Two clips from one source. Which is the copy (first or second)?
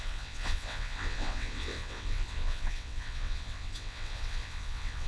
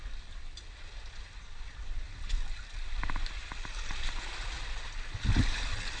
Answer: first